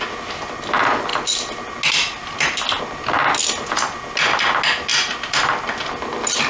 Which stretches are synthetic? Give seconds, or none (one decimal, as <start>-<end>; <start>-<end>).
none